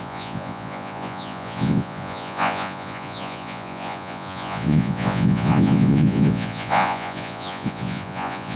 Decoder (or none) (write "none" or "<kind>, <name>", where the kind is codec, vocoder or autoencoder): vocoder, Vocos